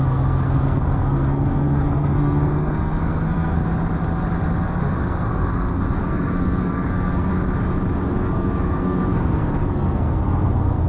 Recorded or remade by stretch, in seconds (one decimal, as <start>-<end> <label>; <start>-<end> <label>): 0.0-3.6 remade; 3.6-4.8 recorded; 4.8-7.3 remade; 7.3-8.1 recorded; 8.1-10.9 remade